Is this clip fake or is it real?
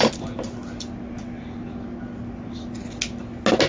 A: real